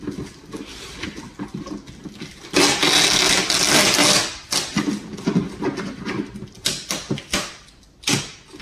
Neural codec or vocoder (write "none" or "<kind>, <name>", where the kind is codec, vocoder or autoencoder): none